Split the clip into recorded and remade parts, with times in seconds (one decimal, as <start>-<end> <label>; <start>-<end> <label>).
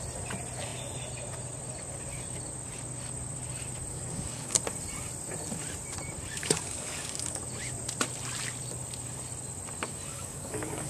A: 0.0-3.9 recorded; 3.9-4.6 remade; 4.6-6.4 recorded; 6.4-7.4 remade; 7.4-10.1 recorded; 10.1-10.9 remade